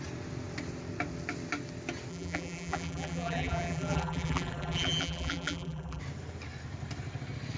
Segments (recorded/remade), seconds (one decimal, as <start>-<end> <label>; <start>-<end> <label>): 0.0-2.1 recorded; 2.1-6.0 remade; 6.0-7.6 recorded